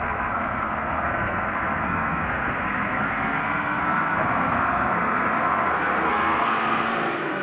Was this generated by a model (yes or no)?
yes